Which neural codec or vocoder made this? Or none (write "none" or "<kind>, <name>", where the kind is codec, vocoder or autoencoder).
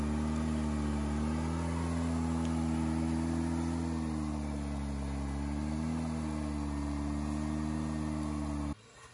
none